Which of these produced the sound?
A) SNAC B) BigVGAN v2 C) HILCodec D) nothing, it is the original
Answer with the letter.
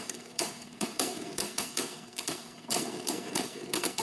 A